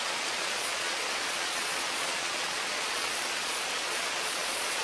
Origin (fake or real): fake